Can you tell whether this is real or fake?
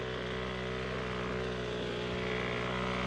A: real